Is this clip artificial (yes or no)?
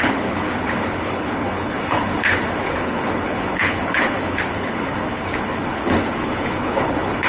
yes